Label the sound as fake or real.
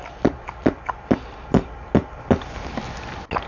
real